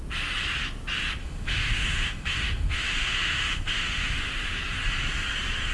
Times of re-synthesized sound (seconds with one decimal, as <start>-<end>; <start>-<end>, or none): 1.2-4.6